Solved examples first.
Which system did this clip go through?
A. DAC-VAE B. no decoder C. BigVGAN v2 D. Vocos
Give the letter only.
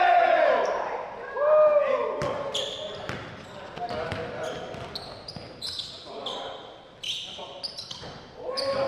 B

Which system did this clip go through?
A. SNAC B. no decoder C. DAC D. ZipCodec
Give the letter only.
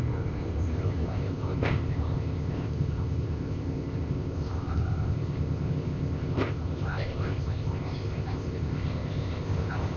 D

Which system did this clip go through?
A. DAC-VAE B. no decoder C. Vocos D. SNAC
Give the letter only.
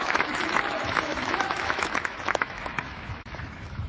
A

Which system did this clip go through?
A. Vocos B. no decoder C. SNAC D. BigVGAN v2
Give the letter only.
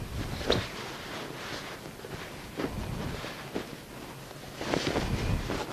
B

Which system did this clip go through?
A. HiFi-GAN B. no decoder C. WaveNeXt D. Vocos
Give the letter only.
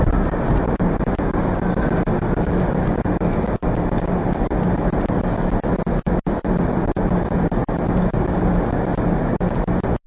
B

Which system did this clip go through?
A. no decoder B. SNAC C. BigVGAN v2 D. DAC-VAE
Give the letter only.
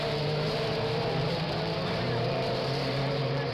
C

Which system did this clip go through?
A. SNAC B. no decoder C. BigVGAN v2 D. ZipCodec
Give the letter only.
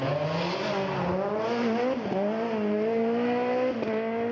B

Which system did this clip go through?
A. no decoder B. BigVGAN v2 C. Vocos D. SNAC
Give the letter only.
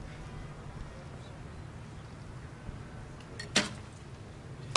A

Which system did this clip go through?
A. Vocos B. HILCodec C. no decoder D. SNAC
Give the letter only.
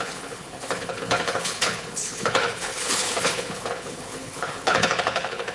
B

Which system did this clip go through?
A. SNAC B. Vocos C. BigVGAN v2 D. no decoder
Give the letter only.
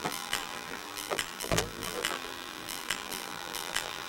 C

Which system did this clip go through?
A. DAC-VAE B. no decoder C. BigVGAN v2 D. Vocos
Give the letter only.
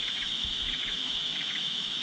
A